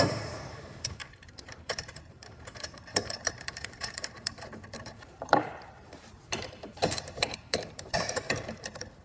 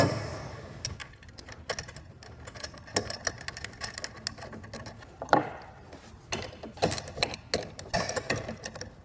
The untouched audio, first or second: second